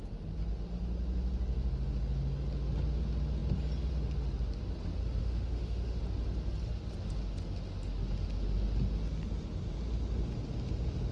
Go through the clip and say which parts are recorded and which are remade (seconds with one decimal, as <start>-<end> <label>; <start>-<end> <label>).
0.0-5.2 recorded; 5.2-6.0 remade; 6.0-11.1 recorded